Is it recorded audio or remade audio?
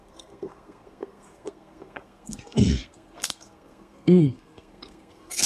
remade